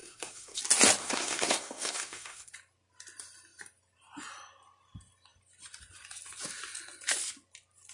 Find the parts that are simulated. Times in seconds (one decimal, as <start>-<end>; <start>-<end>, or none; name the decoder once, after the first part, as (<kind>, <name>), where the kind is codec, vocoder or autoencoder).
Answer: 0.0-0.6 (codec, SNAC); 1.0-2.5